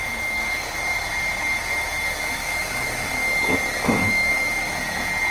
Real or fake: fake